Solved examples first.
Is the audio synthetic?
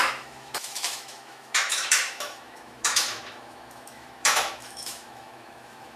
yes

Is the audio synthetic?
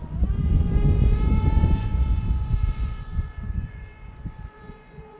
yes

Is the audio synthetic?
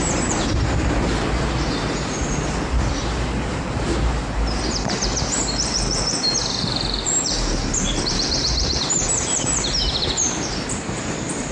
yes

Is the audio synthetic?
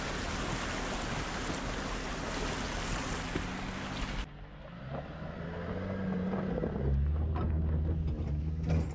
no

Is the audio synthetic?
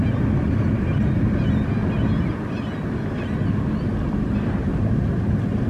no